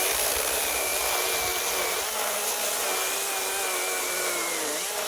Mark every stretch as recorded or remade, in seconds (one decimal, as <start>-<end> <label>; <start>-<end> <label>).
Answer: 0.0-0.9 remade; 0.9-4.0 recorded; 4.0-5.1 remade